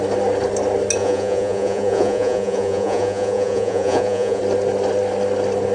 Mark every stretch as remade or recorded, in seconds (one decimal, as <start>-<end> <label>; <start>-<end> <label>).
0.0-1.0 recorded; 1.0-4.4 remade; 4.4-5.7 recorded